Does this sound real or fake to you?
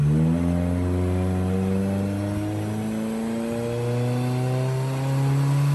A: real